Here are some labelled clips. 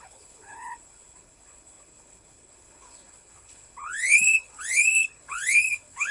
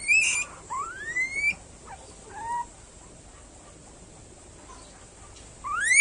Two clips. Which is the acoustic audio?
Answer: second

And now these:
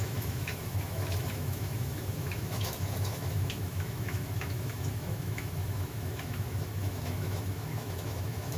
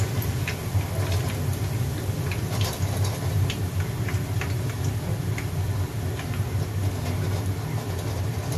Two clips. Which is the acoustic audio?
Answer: second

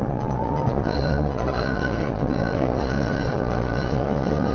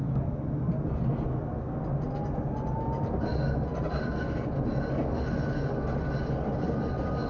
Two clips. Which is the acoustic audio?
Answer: second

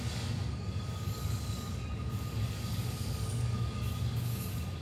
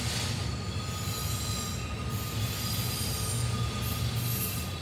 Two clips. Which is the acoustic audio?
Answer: second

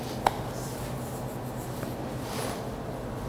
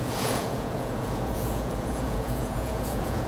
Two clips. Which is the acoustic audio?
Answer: first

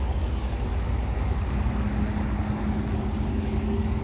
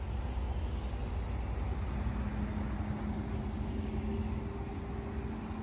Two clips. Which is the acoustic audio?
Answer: second